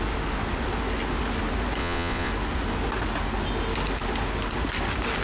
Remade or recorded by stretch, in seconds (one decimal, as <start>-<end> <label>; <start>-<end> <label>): 0.0-1.8 recorded; 1.8-2.3 remade; 2.3-5.2 recorded